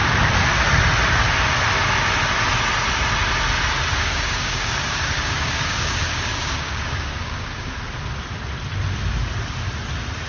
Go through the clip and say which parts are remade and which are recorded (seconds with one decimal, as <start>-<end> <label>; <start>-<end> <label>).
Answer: 0.0-3.9 recorded; 3.9-7.7 remade; 7.7-10.3 recorded